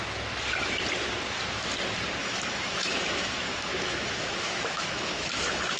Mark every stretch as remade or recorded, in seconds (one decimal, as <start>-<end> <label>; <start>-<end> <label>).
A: 0.0-2.2 recorded; 2.2-5.8 remade